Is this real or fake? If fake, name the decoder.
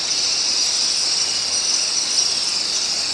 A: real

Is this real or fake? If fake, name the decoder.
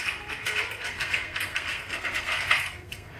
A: fake, codec, SNAC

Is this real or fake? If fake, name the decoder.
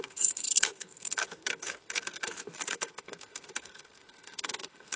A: fake, codec, SNAC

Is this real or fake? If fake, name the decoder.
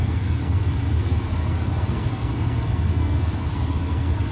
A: fake, codec, SNAC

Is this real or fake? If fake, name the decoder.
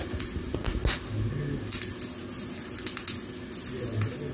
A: real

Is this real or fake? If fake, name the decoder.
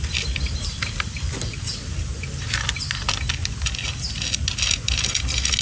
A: real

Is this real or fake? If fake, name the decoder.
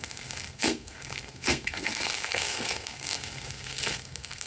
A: fake, codec, SNAC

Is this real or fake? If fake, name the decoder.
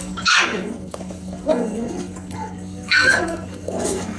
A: fake, codec, SNAC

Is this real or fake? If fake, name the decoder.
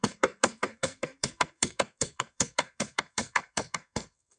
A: fake, codec, SNAC